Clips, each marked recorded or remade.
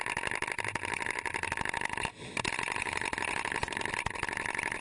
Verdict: recorded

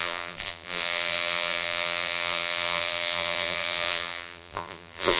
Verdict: remade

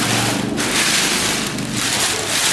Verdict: recorded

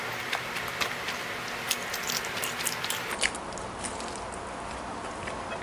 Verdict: recorded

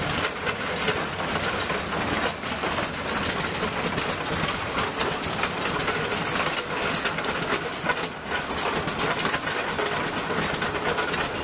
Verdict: recorded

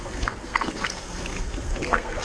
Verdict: remade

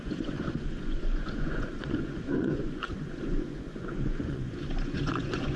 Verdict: remade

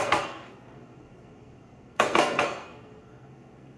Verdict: remade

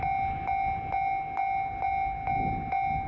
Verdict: recorded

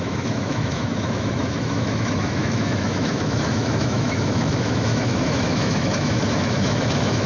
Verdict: remade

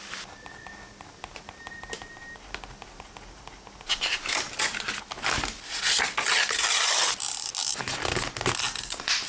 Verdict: recorded